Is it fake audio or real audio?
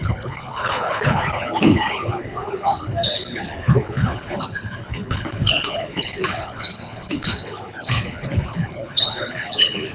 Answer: fake